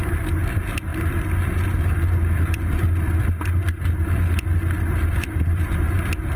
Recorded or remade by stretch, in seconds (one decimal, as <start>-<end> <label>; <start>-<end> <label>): 0.0-5.2 recorded; 5.2-6.0 remade; 6.0-6.4 recorded